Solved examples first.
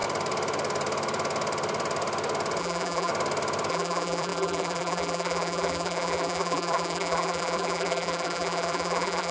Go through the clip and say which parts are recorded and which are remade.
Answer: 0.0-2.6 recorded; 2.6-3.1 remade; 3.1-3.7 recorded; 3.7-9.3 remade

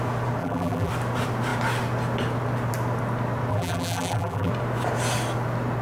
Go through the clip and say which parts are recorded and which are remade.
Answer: 0.0-0.4 recorded; 0.4-0.9 remade; 0.9-3.5 recorded; 3.5-4.5 remade; 4.5-5.8 recorded

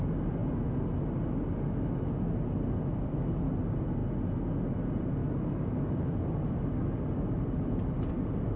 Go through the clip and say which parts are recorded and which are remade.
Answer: 0.0-0.4 remade; 0.4-2.1 recorded; 2.1-4.0 remade; 4.0-4.7 recorded; 4.7-5.2 remade; 5.2-6.3 recorded; 6.3-8.6 remade

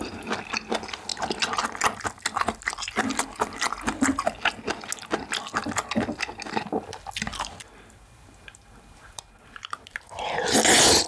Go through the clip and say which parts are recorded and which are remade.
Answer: 0.0-7.3 recorded; 7.3-10.3 remade; 10.3-11.1 recorded

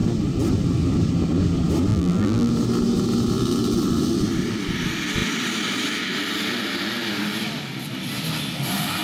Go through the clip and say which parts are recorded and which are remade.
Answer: 0.0-1.9 recorded; 1.9-2.5 remade; 2.5-9.0 recorded

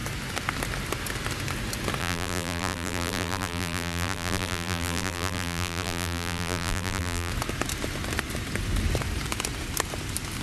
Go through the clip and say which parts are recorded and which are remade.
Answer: 0.0-2.0 recorded; 2.0-7.3 remade; 7.3-10.4 recorded